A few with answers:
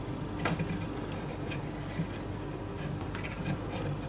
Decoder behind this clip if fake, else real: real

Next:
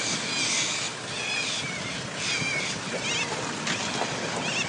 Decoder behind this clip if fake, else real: real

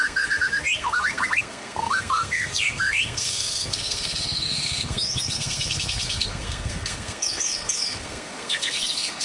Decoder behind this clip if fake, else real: fake, codec, SNAC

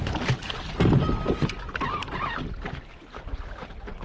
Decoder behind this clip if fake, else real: real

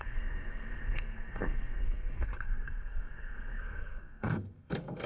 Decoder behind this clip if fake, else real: fake, codec, SNAC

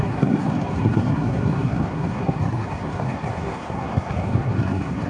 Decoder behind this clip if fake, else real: fake, codec, SNAC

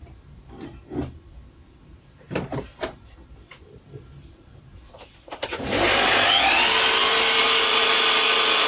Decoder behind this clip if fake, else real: real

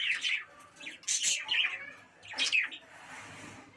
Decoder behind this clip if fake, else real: real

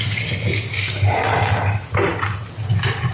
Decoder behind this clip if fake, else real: real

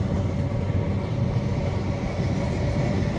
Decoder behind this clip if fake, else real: real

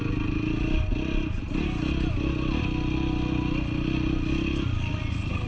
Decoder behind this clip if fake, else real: real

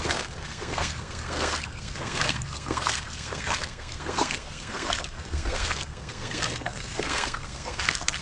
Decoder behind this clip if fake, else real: fake, codec, SNAC